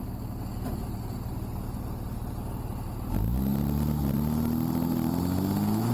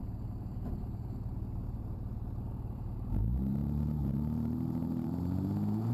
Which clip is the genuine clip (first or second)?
first